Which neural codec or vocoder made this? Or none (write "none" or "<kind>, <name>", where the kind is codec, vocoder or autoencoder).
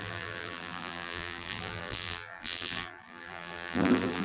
vocoder, BigVGAN v2